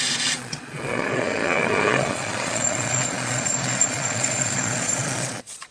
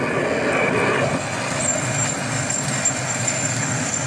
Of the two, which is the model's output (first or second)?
first